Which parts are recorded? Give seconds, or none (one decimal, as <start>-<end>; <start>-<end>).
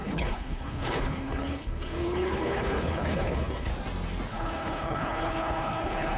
3.7-4.3